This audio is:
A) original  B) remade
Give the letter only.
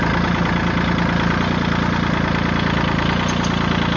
A